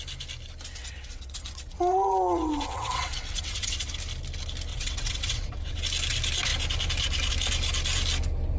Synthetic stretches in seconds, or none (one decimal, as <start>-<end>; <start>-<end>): 0.8-3.9; 4.7-5.8